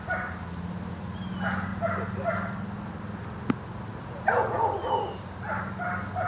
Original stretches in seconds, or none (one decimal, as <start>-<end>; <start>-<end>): 0.0-6.3